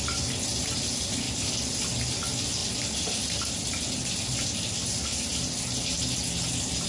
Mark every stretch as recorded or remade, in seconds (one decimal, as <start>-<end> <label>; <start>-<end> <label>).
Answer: 0.0-6.9 recorded